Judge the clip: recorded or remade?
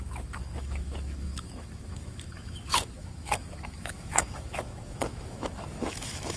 remade